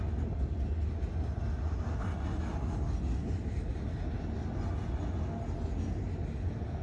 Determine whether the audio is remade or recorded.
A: recorded